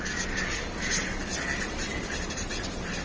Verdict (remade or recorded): recorded